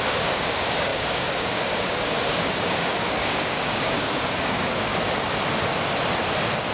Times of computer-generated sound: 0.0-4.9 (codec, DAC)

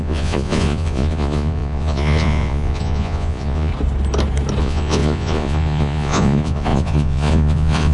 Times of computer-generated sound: 0.0-3.7 (vocoder, Vocos); 4.6-7.9

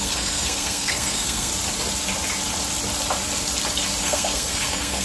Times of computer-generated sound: 0.0-1.5 (codec, SNAC); 4.0-5.0

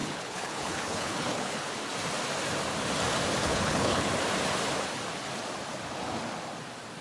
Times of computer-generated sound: 0.0-1.7 (codec, HILCodec); 3.4-4.1

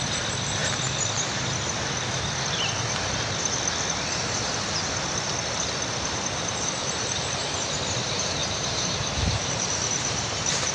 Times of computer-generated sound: 5.9-7.4 (vocoder, BigVGAN v2); 8.4-10.7

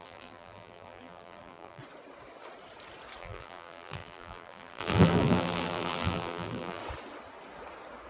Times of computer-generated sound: 0.0-1.8 (vocoder, BigVGAN v2); 3.2-6.8

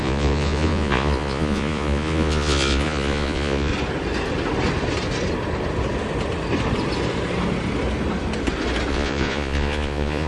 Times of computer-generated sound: 0.0-3.7 (vocoder, Vocos); 8.9-10.3